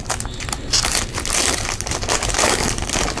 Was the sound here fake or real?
real